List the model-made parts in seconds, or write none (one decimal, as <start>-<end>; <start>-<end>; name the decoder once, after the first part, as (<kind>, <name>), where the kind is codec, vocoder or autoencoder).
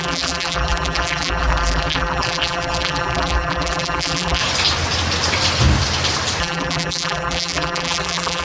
0.0-4.4 (vocoder, BigVGAN v2); 6.4-8.4